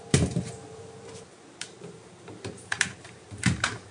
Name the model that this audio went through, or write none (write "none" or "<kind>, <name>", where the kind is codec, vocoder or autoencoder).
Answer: vocoder, BigVGAN v2